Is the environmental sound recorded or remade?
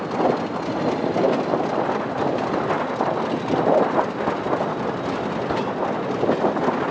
recorded